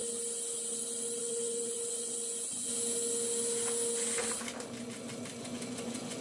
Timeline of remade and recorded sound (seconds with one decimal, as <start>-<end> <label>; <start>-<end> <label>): 0.0-1.2 recorded; 1.2-2.7 remade; 2.7-5.4 recorded; 5.4-6.2 remade